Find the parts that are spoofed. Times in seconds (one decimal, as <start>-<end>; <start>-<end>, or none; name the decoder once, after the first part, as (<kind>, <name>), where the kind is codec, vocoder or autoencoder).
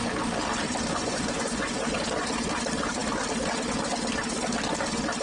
0.9-1.9 (vocoder, Vocos)